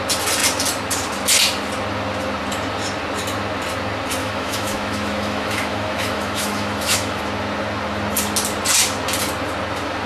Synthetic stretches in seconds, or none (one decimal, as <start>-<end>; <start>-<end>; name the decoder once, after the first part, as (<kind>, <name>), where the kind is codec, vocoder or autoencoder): 4.2-7.2 (autoencoder, DAC-VAE)